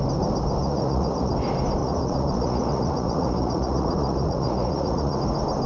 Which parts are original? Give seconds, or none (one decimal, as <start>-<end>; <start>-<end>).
0.0-0.6; 1.3-1.8; 5.2-5.7

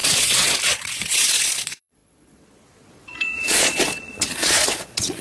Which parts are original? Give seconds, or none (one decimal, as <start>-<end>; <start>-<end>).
none

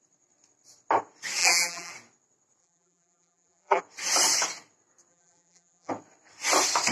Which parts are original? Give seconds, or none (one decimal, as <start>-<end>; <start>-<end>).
0.0-1.4; 1.9-2.6; 3.8-5.1; 5.9-6.9

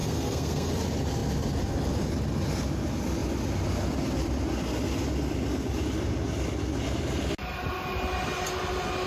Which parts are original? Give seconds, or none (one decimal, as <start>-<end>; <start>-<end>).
0.7-9.1

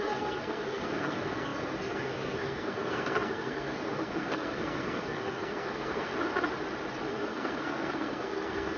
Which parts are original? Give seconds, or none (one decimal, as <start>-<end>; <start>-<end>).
6.1-7.1

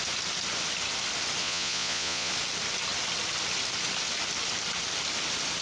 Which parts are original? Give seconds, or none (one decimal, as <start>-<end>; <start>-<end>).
0.0-1.4; 2.3-5.6

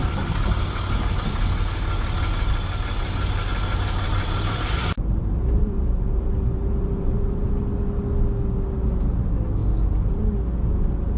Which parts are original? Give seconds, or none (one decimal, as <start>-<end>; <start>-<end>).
0.0-3.5; 7.5-11.2